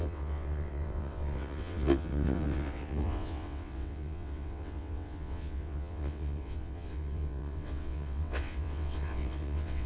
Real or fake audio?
fake